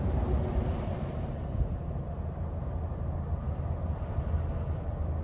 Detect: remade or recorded recorded